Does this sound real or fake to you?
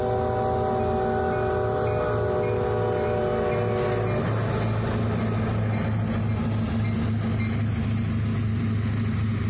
real